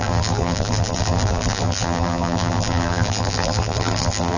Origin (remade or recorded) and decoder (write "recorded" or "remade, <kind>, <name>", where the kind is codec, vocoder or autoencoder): remade, vocoder, BigVGAN v2